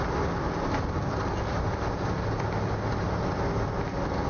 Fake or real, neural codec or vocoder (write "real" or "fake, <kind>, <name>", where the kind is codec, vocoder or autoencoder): real